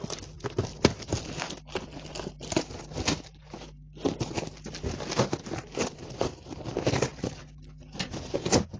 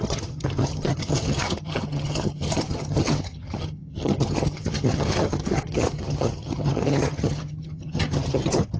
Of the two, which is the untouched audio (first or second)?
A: first